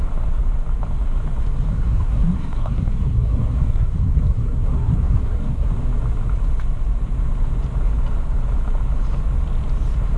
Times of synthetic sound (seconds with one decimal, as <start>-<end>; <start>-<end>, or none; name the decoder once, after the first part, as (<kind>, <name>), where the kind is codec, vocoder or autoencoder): 1.7-5.7 (codec, SNAC)